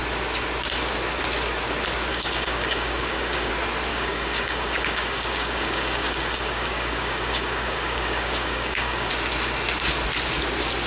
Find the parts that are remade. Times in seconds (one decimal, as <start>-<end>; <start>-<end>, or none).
2.1-3.5; 3.9-9.1